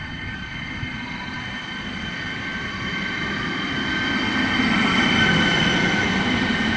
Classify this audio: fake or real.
real